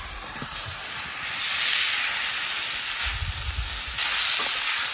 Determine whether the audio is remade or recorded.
recorded